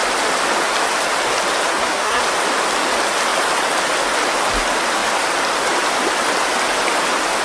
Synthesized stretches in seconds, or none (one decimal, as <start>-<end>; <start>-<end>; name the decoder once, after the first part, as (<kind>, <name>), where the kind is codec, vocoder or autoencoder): 1.7-2.2 (codec, SNAC)